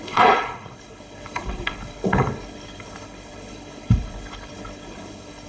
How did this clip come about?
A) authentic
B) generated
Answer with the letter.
B